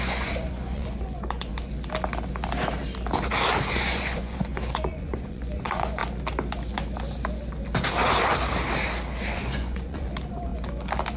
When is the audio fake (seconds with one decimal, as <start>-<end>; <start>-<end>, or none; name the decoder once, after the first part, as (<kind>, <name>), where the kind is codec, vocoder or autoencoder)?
0.0-1.5 (vocoder, Vocos); 3.7-6.0; 9.3-10.5